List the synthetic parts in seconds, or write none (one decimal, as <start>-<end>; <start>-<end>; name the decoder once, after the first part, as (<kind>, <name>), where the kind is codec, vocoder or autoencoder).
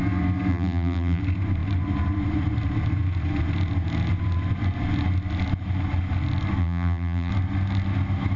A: 0.5-1.2 (vocoder, BigVGAN v2); 6.6-7.3